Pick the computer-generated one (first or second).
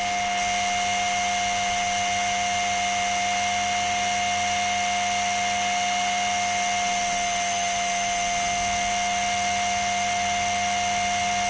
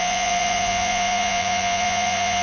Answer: second